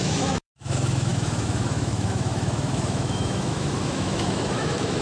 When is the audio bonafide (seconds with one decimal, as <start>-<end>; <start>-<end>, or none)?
none